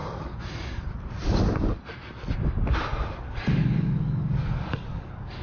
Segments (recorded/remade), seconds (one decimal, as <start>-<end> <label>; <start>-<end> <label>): 0.0-3.2 recorded; 3.2-5.4 remade